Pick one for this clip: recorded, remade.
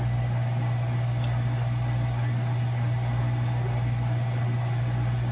recorded